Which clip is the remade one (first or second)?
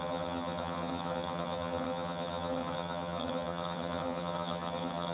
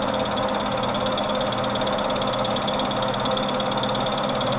first